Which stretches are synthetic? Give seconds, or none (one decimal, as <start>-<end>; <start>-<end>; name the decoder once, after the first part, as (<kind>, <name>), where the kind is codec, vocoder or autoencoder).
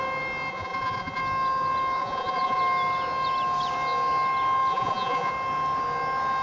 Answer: 0.5-1.2 (vocoder, Vocos); 2.0-2.6; 4.7-5.3